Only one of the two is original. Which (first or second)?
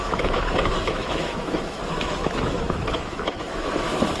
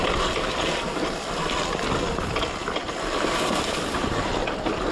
second